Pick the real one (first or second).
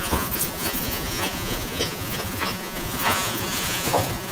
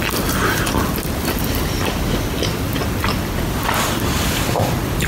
second